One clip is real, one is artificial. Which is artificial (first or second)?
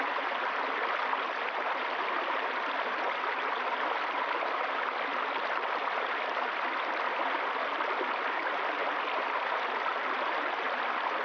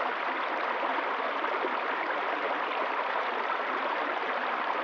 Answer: second